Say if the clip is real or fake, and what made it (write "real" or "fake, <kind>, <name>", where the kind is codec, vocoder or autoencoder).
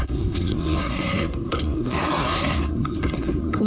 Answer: fake, codec, SNAC